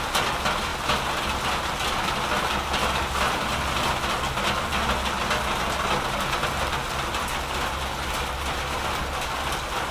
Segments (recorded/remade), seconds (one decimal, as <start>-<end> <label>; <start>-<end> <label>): 0.0-2.8 recorded; 2.8-3.9 remade; 3.9-9.9 recorded